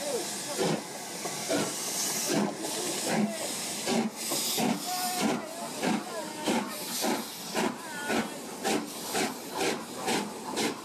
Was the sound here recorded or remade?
recorded